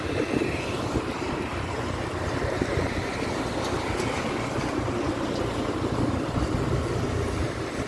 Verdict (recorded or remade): recorded